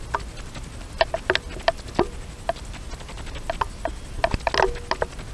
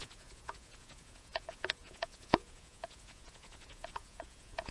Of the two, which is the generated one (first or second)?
second